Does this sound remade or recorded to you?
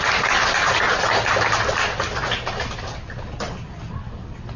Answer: recorded